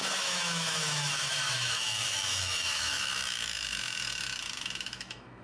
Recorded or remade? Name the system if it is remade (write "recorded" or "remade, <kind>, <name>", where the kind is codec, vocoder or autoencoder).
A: remade, autoencoder, DAC-VAE